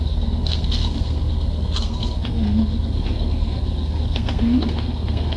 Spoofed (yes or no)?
yes